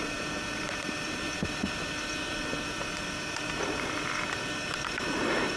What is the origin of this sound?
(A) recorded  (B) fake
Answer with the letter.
B